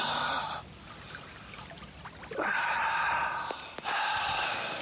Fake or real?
real